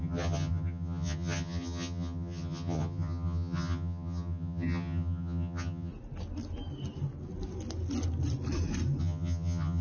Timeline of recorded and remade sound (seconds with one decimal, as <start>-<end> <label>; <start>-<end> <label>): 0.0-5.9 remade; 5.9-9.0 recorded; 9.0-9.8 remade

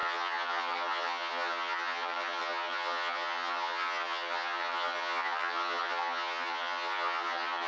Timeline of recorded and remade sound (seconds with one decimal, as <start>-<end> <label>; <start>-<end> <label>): 0.0-7.7 remade

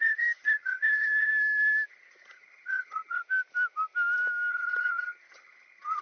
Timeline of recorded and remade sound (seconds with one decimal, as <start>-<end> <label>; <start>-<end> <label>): 0.0-1.3 remade; 1.3-1.9 recorded; 1.9-3.2 remade; 3.2-4.5 recorded; 4.5-6.0 remade

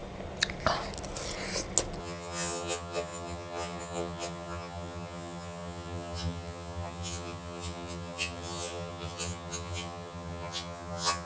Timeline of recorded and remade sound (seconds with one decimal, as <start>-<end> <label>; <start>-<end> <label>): 0.0-2.0 recorded; 2.0-11.3 remade

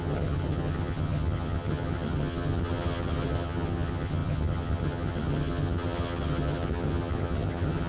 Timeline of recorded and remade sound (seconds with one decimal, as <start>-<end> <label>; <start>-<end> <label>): 0.0-7.9 remade

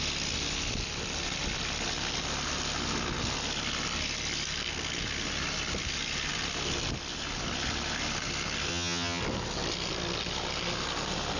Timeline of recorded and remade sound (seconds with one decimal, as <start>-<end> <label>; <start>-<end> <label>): 0.0-8.7 recorded; 8.7-9.2 remade; 9.2-11.4 recorded

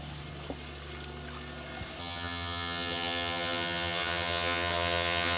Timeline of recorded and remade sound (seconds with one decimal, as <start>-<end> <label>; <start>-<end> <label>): 0.0-2.0 recorded; 2.0-5.4 remade